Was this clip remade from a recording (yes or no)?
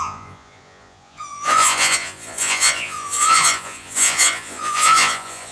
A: yes